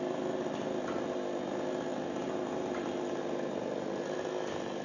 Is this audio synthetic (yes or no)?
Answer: no